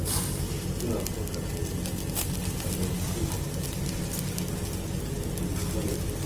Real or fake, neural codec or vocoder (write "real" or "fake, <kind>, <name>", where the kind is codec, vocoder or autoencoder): real